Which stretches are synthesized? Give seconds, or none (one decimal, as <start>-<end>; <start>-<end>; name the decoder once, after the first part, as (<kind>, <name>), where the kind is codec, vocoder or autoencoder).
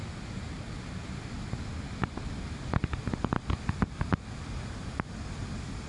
none